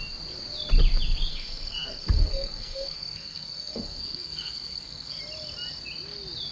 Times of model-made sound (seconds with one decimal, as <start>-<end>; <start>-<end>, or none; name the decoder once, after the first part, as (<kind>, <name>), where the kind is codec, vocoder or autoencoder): 1.3-5.2 (codec, SNAC)